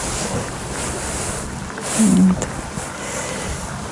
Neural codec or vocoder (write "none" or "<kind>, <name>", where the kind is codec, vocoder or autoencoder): none